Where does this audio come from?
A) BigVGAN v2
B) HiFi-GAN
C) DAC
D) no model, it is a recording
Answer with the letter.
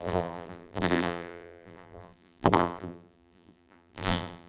A